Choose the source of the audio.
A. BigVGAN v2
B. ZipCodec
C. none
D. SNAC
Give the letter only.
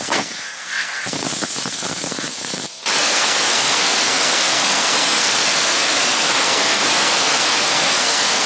D